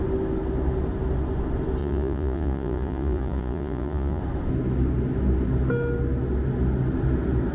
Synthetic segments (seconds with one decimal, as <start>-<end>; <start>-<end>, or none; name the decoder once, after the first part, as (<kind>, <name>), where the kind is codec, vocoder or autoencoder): 1.8-4.2 (vocoder, Vocos)